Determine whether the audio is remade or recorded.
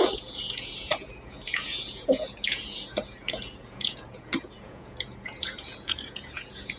remade